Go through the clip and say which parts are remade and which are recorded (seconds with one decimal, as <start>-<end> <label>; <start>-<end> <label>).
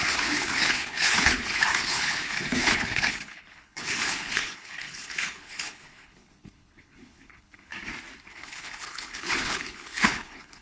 0.0-7.7 remade; 7.7-8.3 recorded; 8.3-10.6 remade